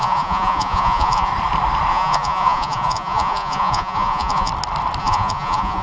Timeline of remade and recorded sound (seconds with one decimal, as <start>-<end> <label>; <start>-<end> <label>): 0.0-1.3 remade; 1.3-1.9 recorded; 1.9-4.5 remade; 4.5-5.0 recorded; 5.0-5.8 remade